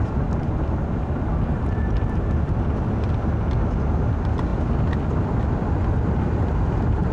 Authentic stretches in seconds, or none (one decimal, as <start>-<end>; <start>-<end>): 0.0-7.1